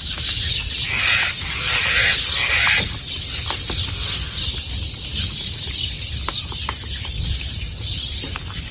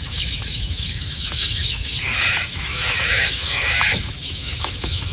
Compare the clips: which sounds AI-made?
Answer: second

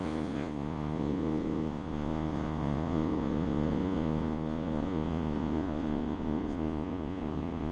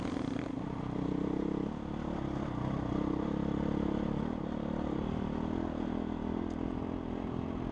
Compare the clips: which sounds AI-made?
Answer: first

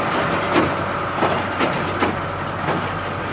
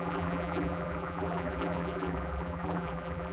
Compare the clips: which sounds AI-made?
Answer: second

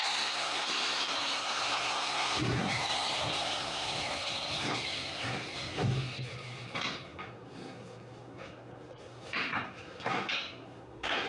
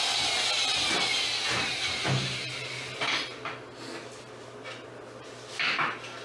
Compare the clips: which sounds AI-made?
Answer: first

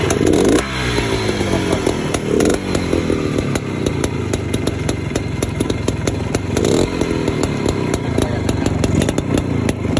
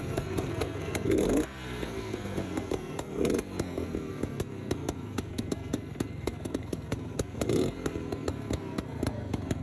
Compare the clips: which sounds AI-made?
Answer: second